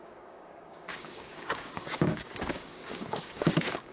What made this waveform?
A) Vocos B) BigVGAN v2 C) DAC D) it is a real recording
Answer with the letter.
C